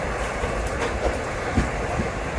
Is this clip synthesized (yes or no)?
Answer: no